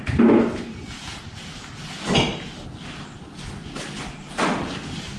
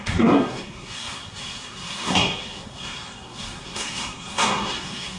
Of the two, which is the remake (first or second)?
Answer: second